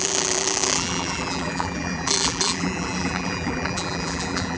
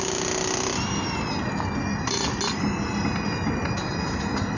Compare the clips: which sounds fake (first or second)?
first